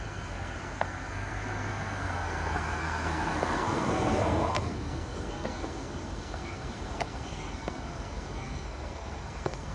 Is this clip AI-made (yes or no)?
yes